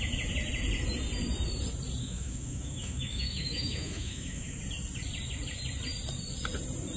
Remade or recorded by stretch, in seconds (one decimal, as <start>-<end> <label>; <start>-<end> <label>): 0.0-2.0 recorded; 2.0-4.6 remade; 4.6-7.0 recorded